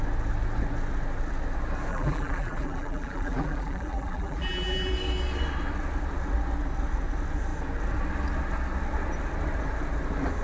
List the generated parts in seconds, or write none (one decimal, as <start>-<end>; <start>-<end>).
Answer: 1.9-4.9